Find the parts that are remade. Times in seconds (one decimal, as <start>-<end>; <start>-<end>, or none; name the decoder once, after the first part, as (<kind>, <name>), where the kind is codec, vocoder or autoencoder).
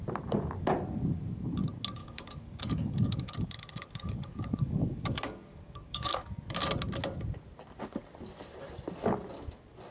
2.0-6.6 (codec, DAC)